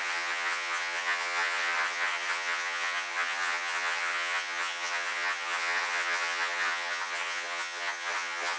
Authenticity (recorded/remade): remade